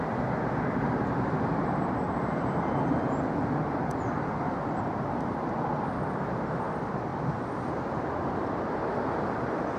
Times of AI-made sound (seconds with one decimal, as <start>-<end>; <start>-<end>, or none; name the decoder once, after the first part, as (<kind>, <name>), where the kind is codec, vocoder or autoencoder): none